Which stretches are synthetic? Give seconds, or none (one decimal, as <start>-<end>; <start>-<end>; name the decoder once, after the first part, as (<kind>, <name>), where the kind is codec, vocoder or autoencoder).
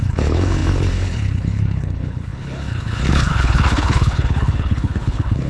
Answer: 0.0-5.5 (codec, HILCodec)